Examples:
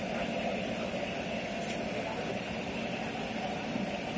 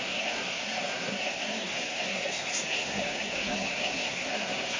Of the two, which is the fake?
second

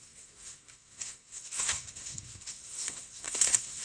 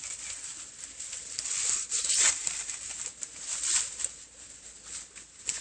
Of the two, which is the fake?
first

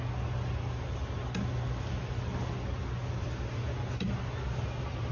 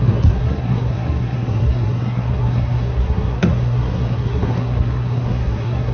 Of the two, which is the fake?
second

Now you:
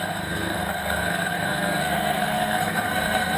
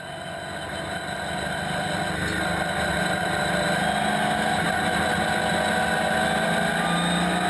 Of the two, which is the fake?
first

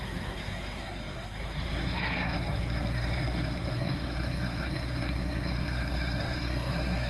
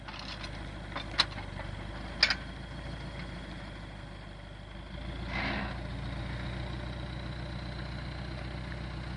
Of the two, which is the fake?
first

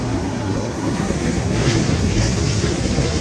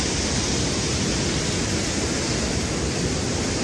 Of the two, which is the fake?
first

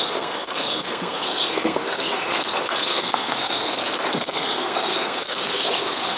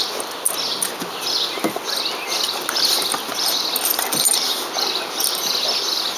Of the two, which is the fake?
first